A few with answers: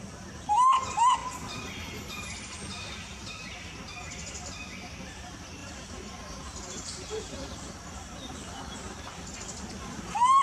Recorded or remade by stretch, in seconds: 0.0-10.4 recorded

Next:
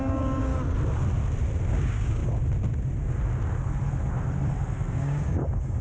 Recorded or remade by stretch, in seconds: 0.0-0.5 remade; 0.5-1.7 recorded; 1.7-2.2 remade; 2.2-4.9 recorded; 4.9-5.8 remade

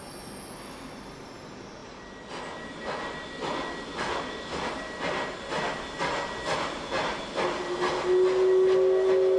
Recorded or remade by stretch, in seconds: 0.0-9.4 recorded